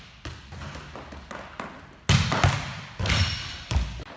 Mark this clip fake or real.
real